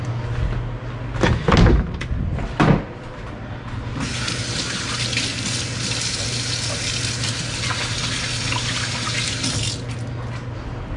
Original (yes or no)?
yes